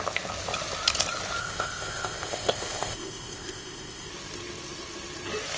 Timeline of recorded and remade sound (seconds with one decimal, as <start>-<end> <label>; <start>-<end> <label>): 0.0-1.4 recorded; 1.4-4.1 remade; 4.1-5.6 recorded